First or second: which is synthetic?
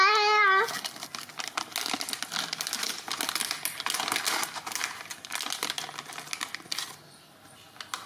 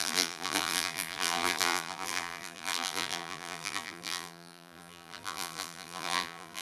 second